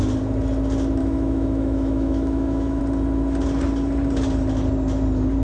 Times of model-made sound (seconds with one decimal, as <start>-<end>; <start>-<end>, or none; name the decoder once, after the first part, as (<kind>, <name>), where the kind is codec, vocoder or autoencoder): 1.0-2.8 (autoencoder, DAC-VAE)